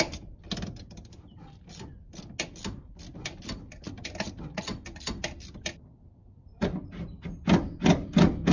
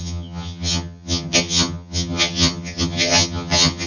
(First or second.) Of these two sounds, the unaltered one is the first